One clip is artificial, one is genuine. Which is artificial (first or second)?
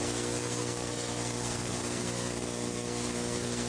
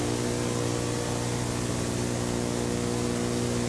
first